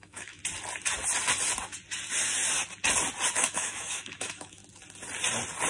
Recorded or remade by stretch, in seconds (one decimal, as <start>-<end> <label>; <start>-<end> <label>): 0.0-0.4 remade; 0.4-3.3 recorded; 3.3-4.6 remade; 4.6-5.7 recorded